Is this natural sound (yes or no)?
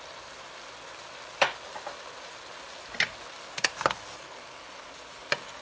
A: yes